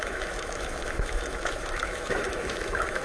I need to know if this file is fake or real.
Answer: fake